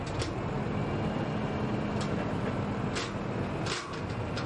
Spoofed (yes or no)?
no